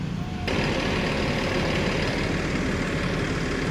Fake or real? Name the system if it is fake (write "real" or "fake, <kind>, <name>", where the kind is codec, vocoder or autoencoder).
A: real